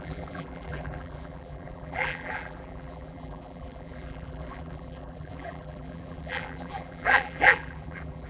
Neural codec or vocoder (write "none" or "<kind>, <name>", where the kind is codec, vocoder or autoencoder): vocoder, BigVGAN v2